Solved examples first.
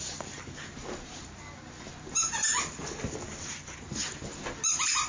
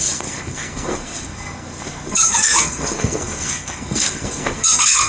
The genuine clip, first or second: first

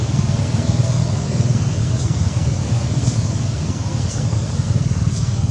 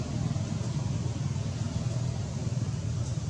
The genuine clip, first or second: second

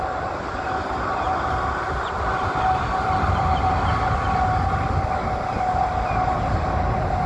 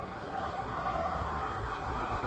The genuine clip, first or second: first